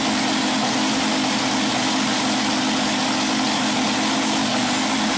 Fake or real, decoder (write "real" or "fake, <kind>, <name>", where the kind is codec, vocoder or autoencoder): real